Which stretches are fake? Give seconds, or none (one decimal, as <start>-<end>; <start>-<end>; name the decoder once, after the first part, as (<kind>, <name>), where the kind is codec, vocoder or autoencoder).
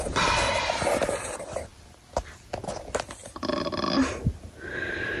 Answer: 0.0-1.7 (vocoder, BigVGAN v2); 4.8-5.2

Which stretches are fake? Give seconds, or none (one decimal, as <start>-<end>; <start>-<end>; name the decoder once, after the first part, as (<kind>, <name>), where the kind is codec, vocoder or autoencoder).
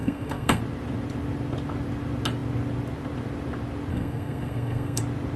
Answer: 0.0-0.6 (codec, SNAC); 3.9-5.0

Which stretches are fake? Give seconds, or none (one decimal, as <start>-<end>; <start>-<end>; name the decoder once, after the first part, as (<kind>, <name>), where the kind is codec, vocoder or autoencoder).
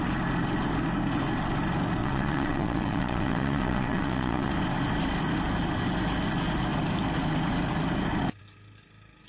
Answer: 2.0-4.5 (vocoder, WaveNeXt)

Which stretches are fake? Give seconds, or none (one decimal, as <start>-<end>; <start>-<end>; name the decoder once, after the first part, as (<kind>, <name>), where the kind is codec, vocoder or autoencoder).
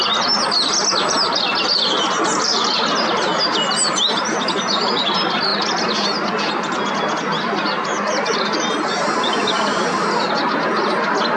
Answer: none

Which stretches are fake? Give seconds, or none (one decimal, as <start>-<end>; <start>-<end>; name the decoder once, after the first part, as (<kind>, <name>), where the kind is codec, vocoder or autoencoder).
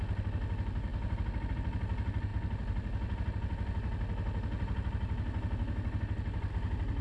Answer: none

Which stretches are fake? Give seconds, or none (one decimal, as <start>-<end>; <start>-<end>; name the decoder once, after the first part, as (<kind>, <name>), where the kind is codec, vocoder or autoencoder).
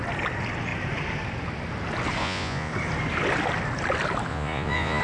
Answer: 2.2-2.7 (vocoder, Vocos); 4.3-5.0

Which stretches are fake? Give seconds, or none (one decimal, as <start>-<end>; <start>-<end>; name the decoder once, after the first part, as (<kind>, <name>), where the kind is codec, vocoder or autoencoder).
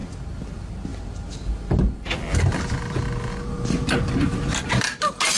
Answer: none